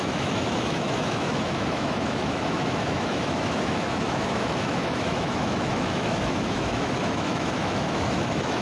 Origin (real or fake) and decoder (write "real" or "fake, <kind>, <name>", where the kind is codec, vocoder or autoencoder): fake, autoencoder, DAC-VAE